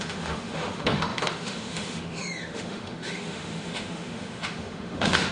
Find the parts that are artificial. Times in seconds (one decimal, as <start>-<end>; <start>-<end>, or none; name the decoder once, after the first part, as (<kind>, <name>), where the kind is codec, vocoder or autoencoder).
0.0-5.3 (autoencoder, DAC-VAE)